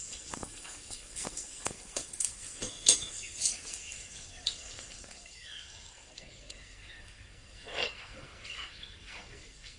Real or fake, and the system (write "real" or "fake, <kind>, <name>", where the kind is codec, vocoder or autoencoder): fake, codec, SNAC